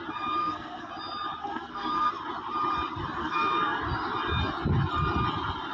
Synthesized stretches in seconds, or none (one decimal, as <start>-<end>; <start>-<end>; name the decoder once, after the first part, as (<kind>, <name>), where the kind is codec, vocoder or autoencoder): 0.4-0.9 (codec, SNAC); 1.4-2.1; 3.2-3.8

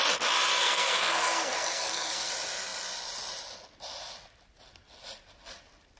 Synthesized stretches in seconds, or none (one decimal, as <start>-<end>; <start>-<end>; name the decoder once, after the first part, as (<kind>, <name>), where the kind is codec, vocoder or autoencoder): 0.6-2.3 (codec, SNAC)

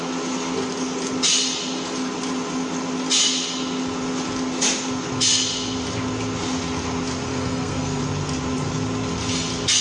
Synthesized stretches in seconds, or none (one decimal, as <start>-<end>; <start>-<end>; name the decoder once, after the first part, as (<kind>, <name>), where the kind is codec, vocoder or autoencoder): 7.3-8.0 (codec, SNAC)

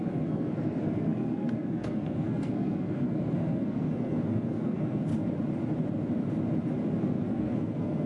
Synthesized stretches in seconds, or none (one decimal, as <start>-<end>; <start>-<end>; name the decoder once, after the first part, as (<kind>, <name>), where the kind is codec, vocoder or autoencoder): 0.0-5.1 (codec, SNAC); 7.0-8.1

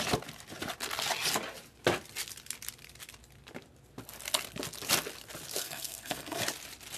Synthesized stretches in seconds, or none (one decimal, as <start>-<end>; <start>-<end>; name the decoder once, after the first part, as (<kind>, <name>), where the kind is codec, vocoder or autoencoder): 5.6-6.4 (codec, SNAC)

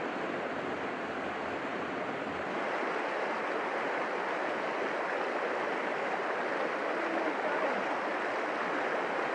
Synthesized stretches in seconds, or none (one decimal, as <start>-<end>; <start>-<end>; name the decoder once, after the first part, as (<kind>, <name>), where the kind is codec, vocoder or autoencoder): none